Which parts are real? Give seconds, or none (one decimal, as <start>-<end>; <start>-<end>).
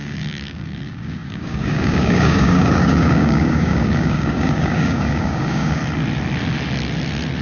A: 5.8-7.4